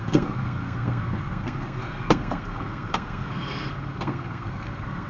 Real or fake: fake